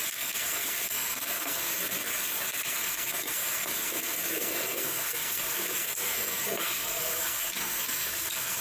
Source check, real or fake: fake